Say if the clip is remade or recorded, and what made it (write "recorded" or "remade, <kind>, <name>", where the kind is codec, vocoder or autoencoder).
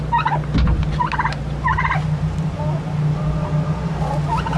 recorded